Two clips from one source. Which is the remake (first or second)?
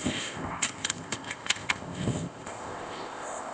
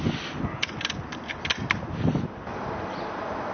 first